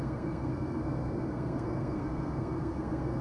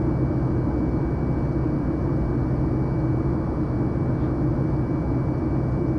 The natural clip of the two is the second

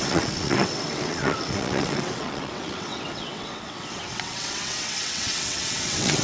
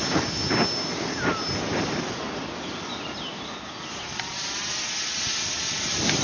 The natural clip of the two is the second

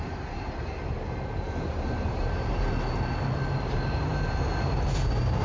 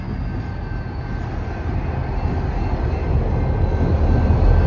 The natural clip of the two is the second